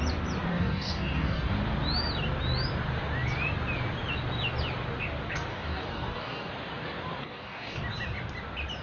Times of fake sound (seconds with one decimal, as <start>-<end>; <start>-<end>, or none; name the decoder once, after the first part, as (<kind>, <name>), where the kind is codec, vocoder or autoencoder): 0.5-1.5 (codec, DAC); 5.5-6.5; 7.2-7.8